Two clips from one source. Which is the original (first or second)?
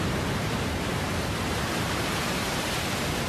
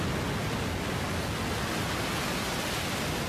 second